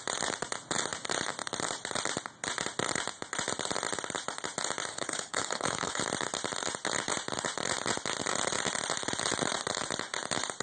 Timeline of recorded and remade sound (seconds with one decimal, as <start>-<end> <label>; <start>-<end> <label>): 0.0-4.9 recorded; 4.9-6.0 remade; 6.0-10.6 recorded

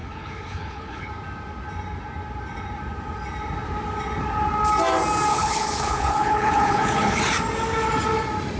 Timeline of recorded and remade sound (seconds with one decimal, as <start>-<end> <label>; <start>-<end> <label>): 0.0-1.1 remade; 1.1-5.3 recorded; 5.3-7.2 remade; 7.2-8.6 recorded

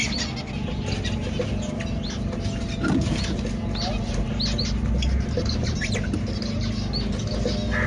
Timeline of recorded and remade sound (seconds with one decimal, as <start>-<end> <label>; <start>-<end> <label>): 0.0-7.9 recorded